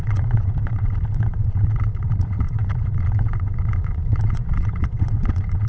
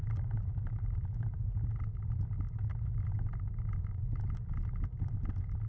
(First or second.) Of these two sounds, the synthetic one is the first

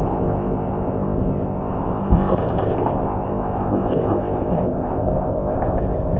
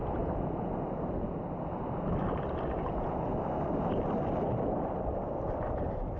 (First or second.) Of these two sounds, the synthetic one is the first